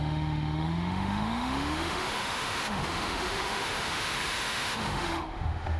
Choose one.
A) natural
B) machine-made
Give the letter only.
B